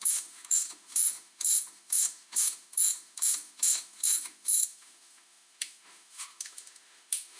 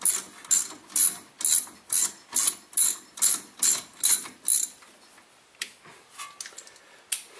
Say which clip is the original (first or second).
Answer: second